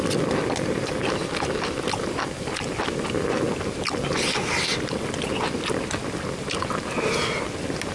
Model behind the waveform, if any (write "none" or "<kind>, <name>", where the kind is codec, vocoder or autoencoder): none